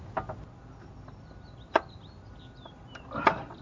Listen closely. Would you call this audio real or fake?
real